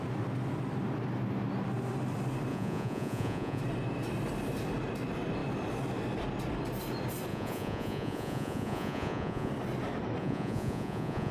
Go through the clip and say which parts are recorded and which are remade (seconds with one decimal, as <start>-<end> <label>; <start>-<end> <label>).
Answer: 0.0-2.5 recorded; 2.5-3.6 remade; 3.6-7.3 recorded; 7.3-9.5 remade; 9.5-10.2 recorded; 10.2-11.3 remade